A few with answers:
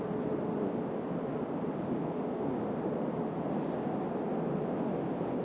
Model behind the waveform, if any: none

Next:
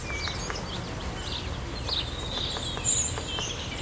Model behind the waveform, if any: none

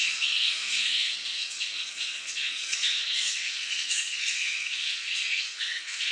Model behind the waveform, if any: codec, SNAC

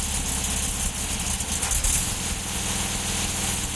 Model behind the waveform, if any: none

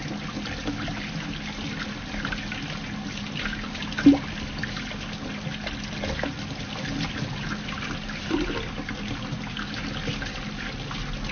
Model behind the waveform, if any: none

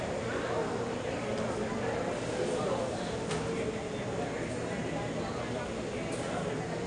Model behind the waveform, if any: none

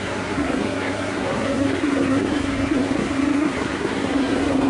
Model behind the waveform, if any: codec, SNAC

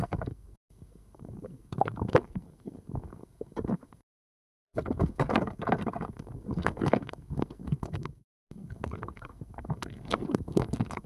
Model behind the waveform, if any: codec, SNAC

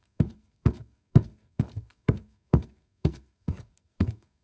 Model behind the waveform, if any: codec, SNAC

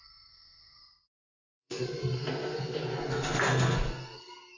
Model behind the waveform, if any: codec, SNAC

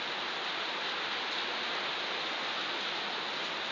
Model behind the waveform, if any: none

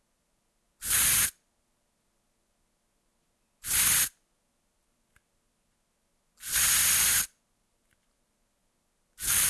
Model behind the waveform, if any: none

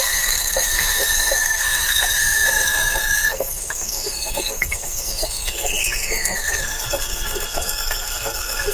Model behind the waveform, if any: codec, SNAC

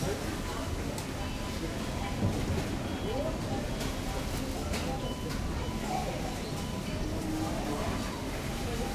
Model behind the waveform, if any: none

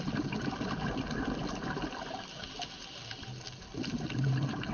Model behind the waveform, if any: none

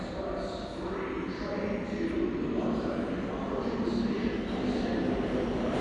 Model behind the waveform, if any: none